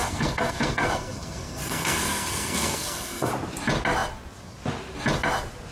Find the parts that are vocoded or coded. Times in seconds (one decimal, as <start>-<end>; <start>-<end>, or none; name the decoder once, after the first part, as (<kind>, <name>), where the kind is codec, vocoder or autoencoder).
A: 0.0-3.3 (codec, SNAC)